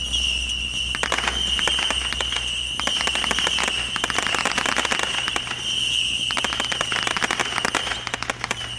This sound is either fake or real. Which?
real